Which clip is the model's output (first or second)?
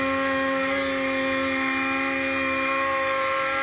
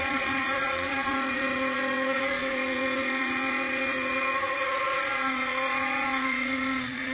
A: second